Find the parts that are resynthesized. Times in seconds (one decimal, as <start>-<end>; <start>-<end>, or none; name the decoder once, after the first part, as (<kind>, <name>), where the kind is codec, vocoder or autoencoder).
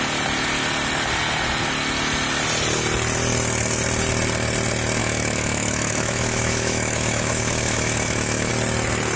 5.0-8.5 (autoencoder, DAC-VAE)